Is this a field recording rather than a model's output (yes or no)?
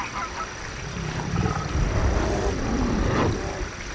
yes